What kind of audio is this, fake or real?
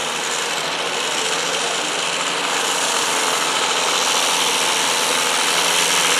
real